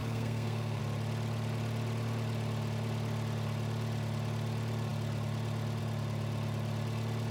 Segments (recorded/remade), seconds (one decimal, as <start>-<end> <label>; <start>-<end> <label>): 0.0-0.8 remade; 0.8-7.3 recorded